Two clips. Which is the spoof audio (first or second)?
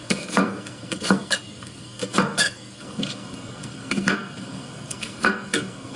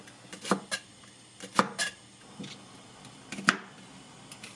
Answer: first